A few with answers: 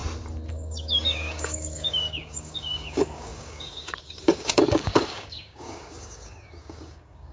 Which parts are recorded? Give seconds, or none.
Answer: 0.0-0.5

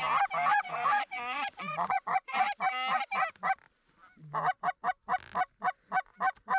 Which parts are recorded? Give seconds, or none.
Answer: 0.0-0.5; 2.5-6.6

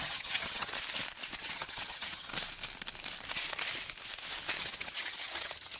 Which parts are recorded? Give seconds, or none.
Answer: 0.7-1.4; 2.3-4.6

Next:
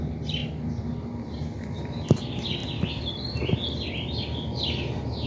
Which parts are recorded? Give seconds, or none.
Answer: 0.4-1.8

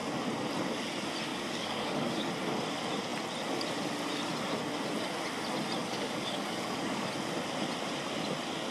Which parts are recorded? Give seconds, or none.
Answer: 0.0-1.3; 2.3-5.8; 7.1-8.7